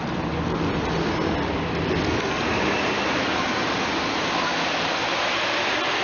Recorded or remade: recorded